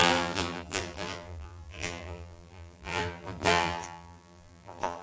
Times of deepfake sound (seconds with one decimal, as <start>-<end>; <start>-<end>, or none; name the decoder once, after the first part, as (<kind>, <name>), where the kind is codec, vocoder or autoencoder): 0.0-5.0 (vocoder, BigVGAN v2)